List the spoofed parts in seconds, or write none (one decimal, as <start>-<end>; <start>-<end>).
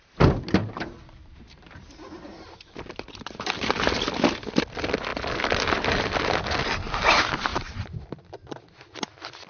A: 0.6-3.1; 7.5-9.0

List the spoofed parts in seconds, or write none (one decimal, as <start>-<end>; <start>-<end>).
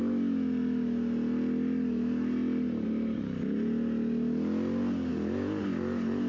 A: none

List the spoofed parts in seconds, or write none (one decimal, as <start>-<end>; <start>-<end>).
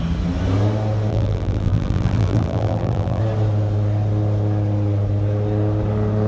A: 1.1-3.2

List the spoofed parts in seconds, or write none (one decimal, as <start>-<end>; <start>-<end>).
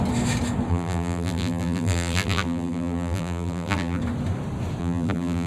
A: 0.7-4.0; 4.8-5.5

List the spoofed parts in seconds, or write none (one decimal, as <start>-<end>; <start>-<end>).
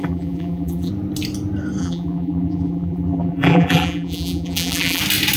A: 0.0-0.9; 1.8-5.0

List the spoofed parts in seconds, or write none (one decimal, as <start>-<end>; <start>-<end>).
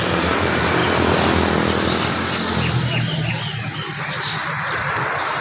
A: 0.0-0.8; 4.0-5.4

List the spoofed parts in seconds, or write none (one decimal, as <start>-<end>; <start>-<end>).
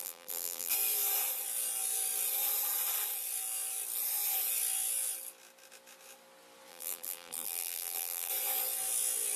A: 0.0-0.7; 6.7-8.3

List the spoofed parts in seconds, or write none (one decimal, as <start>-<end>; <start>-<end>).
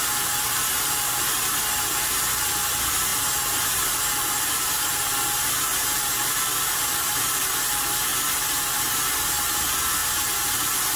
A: none